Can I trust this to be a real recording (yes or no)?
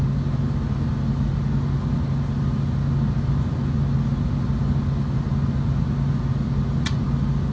yes